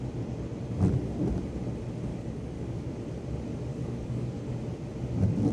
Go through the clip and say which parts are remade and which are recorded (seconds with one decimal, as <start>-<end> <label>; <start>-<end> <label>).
0.0-2.1 recorded; 2.1-2.9 remade; 2.9-3.7 recorded; 3.7-4.4 remade; 4.4-5.5 recorded